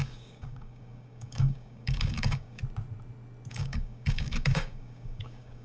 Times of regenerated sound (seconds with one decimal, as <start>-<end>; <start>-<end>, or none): 0.0-2.6; 3.5-5.6